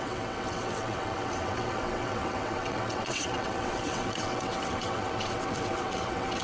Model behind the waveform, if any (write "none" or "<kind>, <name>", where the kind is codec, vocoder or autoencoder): vocoder, WaveNeXt